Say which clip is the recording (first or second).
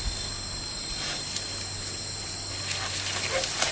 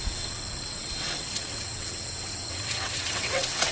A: first